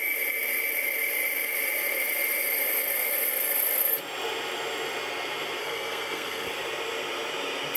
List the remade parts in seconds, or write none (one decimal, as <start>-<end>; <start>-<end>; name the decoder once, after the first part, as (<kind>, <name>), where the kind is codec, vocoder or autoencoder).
5.6-6.5 (codec, SNAC)